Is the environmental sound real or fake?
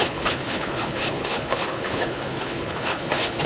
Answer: fake